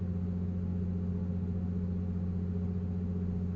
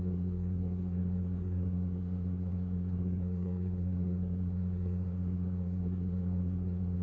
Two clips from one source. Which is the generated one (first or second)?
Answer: second